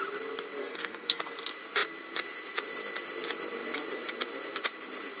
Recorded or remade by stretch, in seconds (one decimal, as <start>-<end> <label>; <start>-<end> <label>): 0.0-0.6 recorded; 0.6-1.2 remade; 1.2-5.2 recorded